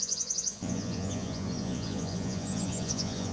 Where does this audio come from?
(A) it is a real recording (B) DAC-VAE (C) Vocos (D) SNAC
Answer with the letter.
C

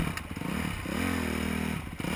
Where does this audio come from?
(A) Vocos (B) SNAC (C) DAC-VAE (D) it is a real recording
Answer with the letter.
D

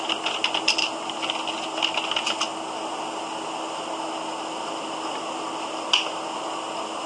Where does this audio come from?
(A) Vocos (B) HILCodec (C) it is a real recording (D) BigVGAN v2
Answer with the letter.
C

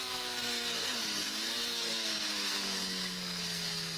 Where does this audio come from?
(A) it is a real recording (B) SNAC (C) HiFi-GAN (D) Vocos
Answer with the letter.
B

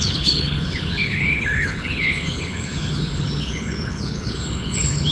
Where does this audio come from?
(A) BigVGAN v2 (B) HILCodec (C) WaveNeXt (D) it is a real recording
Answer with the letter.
B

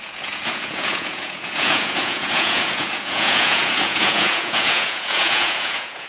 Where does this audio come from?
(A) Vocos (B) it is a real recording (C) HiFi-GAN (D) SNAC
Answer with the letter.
A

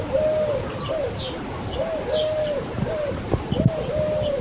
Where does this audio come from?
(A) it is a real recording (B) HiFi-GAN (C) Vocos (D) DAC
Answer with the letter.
A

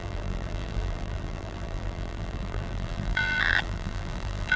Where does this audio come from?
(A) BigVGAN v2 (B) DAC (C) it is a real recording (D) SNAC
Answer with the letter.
A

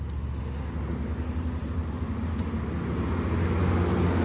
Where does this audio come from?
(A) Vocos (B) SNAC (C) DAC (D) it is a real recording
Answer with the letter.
D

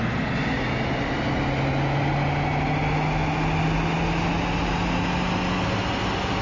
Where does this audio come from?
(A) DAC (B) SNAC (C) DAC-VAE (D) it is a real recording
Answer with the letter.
D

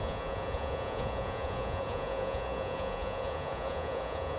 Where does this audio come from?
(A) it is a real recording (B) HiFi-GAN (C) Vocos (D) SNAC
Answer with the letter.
C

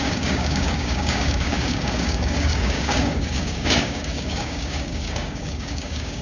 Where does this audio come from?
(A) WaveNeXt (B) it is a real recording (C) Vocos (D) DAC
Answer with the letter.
D